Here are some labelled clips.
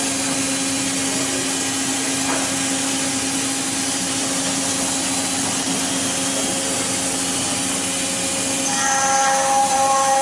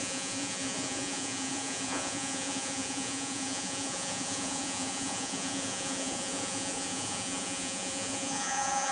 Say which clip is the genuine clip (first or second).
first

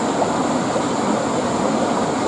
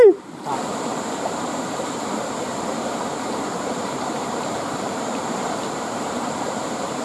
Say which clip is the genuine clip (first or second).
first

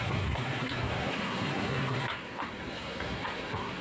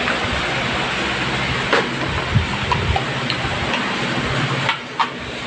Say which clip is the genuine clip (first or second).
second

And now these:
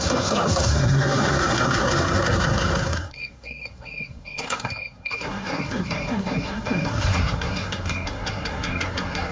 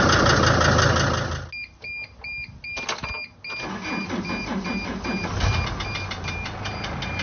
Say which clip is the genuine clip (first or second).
second